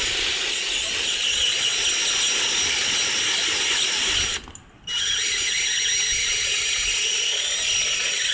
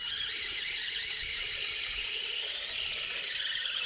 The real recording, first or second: first